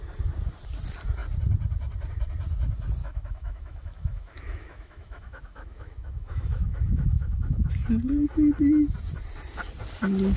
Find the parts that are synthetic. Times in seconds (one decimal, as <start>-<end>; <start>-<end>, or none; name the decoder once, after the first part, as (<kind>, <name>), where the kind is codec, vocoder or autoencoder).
3.0-7.7 (autoencoder, DAC-VAE)